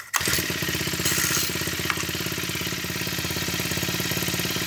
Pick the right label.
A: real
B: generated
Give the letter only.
A